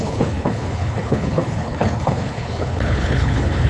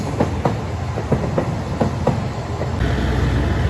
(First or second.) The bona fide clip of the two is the second